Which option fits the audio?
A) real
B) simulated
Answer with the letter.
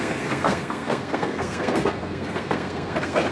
B